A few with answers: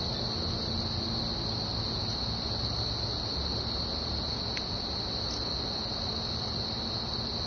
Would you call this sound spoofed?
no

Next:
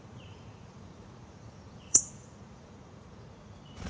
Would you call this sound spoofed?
yes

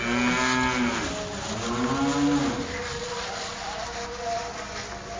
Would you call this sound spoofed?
no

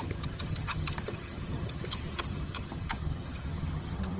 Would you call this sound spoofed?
yes